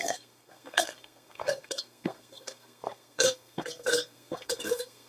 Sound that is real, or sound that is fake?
fake